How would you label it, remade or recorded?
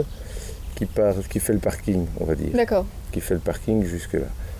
remade